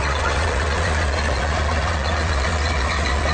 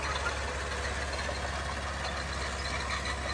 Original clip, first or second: second